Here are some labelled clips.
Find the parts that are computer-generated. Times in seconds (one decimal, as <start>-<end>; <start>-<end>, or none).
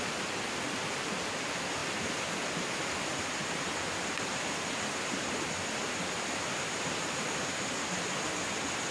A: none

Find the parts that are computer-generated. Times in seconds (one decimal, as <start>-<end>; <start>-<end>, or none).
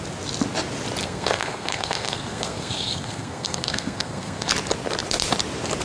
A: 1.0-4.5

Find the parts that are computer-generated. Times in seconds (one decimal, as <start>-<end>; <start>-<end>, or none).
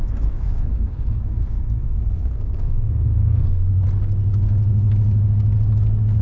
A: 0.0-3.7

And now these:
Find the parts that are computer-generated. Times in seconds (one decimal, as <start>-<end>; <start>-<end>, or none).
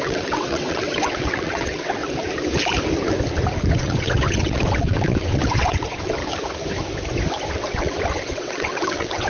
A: 0.0-2.0; 3.7-6.2; 7.5-9.3